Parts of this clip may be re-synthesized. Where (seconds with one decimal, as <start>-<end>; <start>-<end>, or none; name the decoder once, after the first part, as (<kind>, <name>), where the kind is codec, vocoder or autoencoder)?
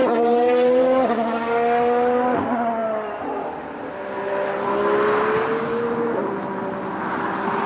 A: 0.0-0.8 (vocoder, BigVGAN v2); 2.8-3.6